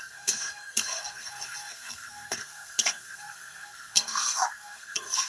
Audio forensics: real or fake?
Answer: fake